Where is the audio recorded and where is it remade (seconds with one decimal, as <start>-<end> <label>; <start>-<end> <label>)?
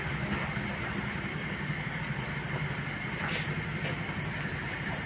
0.0-1.3 recorded; 1.3-2.0 remade; 2.0-5.1 recorded